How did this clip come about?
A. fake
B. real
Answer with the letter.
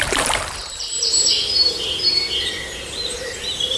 A